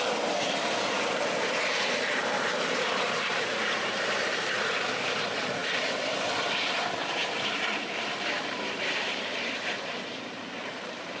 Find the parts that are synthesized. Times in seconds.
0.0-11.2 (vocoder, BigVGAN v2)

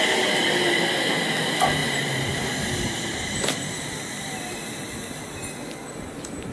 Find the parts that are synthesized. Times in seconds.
1.8-3.7 (vocoder, BigVGAN v2)

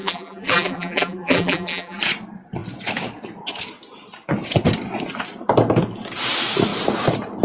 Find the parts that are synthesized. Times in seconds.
0.0-2.0 (vocoder, BigVGAN v2)

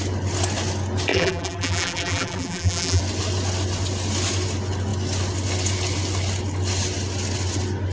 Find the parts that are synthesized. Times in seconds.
1.1-3.0 (vocoder, BigVGAN v2)